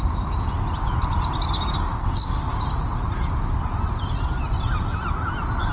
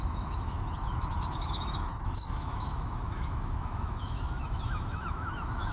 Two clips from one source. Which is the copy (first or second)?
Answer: second